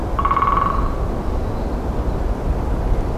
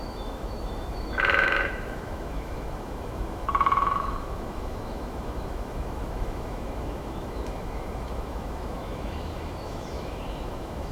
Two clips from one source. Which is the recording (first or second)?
first